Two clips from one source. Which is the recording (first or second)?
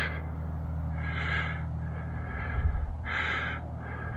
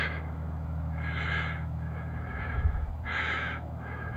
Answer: first